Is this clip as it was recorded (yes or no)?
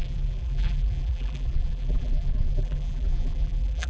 no